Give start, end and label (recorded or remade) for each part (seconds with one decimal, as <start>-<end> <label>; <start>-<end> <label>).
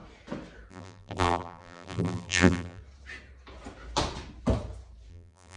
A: 0.0-0.7 recorded; 0.7-2.8 remade; 2.8-5.1 recorded; 5.1-5.6 remade